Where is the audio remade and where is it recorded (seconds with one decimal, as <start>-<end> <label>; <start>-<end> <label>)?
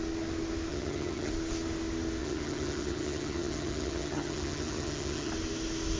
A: 0.0-0.7 recorded; 0.7-1.3 remade; 1.3-2.2 recorded; 2.2-5.3 remade; 5.3-6.0 recorded